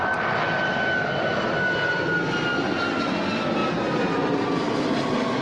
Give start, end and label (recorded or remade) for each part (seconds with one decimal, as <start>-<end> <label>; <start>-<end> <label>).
0.0-5.4 recorded